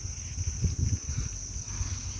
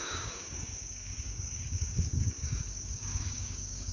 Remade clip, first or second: second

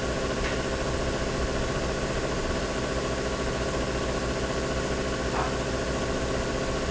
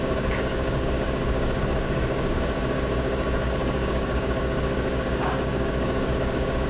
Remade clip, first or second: second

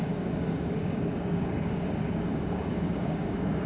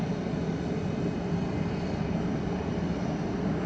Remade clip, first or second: first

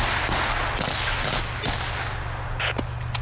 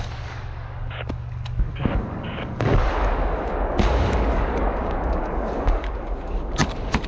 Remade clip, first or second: second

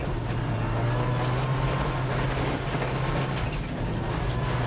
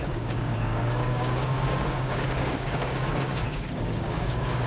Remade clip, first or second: second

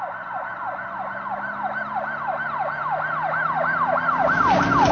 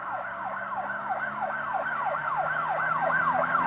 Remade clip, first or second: second